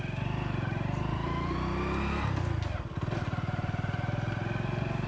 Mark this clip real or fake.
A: real